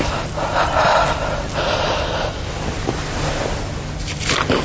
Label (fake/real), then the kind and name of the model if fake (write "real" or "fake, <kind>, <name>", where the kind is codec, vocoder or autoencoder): real